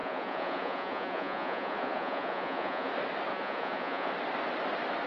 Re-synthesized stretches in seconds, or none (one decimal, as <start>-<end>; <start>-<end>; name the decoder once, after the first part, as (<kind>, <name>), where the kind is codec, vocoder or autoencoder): 0.0-2.9 (vocoder, Vocos); 3.3-4.1